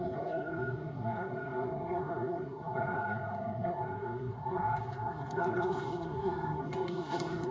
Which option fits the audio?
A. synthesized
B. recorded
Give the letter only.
A